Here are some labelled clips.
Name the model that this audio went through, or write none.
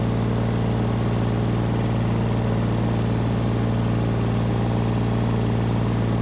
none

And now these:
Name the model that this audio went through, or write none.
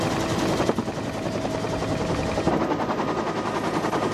none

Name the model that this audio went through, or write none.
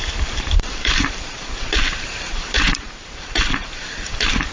vocoder, BigVGAN v2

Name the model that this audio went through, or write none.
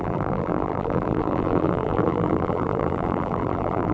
vocoder, BigVGAN v2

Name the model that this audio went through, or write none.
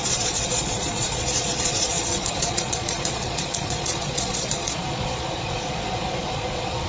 vocoder, Vocos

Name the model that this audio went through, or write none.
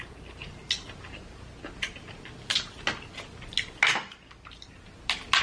none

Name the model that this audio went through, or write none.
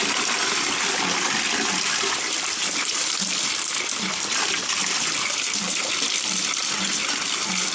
vocoder, BigVGAN v2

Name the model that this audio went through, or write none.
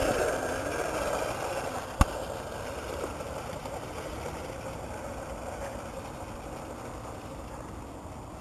none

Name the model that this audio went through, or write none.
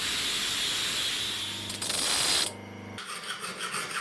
none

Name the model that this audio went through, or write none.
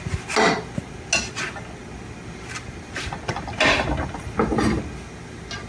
none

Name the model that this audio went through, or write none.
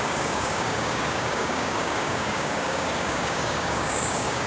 codec, DAC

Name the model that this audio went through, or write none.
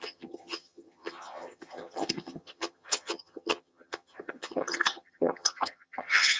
vocoder, HiFi-GAN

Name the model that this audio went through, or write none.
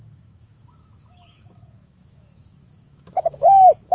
autoencoder, DAC-VAE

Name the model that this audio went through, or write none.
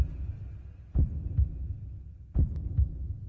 none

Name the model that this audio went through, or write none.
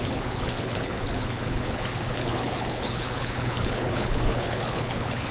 codec, HILCodec